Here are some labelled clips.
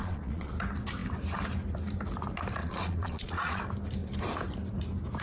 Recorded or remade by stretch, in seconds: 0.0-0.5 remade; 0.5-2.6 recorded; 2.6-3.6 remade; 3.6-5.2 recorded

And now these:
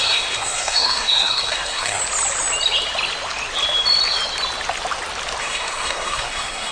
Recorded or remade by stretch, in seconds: 0.0-2.0 remade; 2.0-5.4 recorded; 5.4-6.7 remade